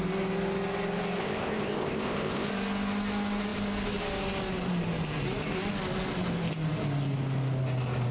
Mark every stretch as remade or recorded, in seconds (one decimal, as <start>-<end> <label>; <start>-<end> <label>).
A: 0.0-1.2 recorded; 1.2-2.5 remade; 2.5-8.1 recorded